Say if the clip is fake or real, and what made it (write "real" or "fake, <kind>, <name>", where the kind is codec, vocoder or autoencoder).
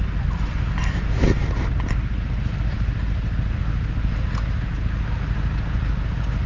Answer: real